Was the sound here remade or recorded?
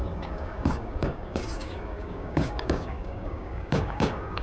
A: remade